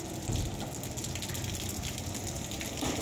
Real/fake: real